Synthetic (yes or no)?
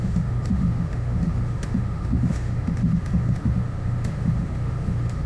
yes